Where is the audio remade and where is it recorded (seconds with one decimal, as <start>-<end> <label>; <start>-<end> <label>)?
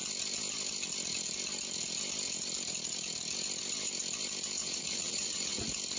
0.0-4.6 recorded; 4.6-5.6 remade; 5.6-6.0 recorded